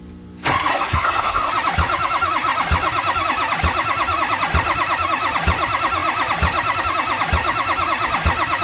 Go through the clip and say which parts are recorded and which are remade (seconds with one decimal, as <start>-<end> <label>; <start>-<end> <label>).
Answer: 0.0-0.7 recorded; 0.7-1.5 remade; 1.5-8.6 recorded